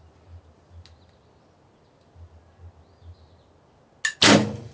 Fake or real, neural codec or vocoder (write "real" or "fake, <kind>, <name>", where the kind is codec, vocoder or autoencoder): real